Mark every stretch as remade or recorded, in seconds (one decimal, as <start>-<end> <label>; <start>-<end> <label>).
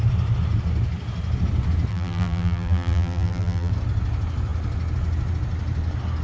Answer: 0.0-1.9 recorded; 1.9-3.7 remade; 3.7-6.2 recorded